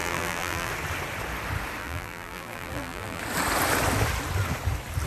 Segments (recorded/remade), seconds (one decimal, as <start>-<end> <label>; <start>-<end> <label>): 0.0-0.7 remade; 0.7-1.8 recorded; 1.8-3.2 remade; 3.2-5.1 recorded